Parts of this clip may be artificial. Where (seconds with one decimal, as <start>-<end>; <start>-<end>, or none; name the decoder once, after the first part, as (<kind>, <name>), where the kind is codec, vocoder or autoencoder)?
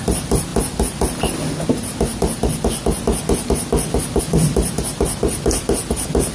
none